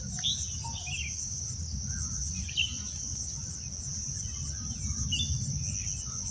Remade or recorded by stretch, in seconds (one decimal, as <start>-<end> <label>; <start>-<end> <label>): 0.0-6.3 recorded